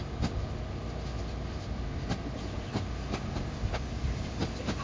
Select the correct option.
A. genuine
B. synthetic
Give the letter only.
A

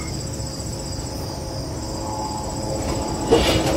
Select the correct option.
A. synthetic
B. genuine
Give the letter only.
B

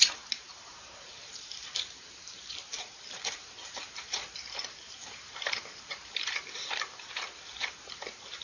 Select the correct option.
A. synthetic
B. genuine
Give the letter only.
A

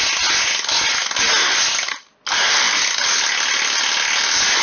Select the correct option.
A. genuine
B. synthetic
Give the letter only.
A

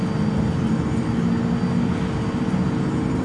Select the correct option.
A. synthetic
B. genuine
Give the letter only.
B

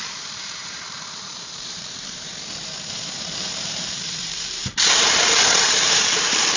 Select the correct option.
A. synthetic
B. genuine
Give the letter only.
A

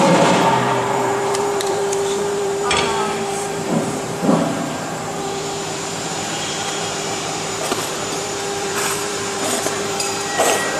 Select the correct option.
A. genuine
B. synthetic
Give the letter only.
B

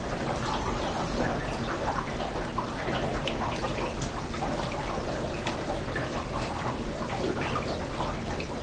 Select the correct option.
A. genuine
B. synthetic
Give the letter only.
A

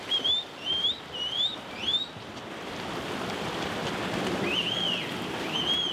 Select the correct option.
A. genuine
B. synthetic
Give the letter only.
A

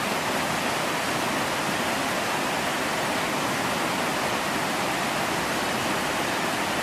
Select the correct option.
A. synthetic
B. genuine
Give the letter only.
B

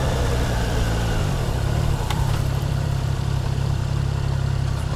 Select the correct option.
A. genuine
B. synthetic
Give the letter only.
B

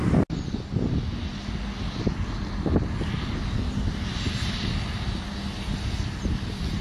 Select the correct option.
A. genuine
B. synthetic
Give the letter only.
A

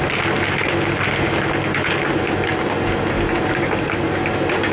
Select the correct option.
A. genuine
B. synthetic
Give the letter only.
A